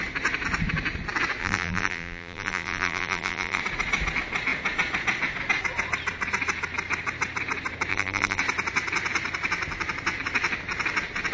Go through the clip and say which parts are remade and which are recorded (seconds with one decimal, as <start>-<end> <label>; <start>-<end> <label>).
0.0-1.4 recorded; 1.4-3.6 remade; 3.6-7.9 recorded; 7.9-8.4 remade; 8.4-11.3 recorded